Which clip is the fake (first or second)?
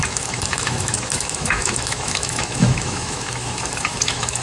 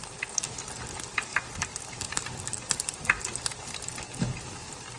first